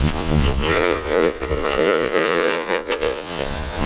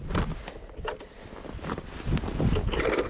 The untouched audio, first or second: second